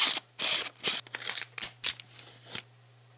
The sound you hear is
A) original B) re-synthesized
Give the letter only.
A